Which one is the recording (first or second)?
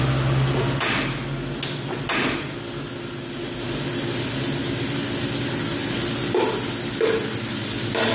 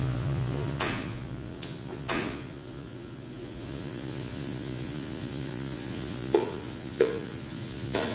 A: first